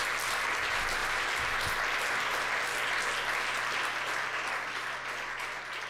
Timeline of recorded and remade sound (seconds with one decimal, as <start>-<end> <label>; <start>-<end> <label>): 0.0-5.9 recorded